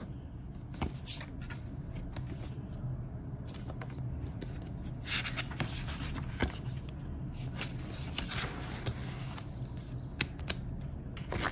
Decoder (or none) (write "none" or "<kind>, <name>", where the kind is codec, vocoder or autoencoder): none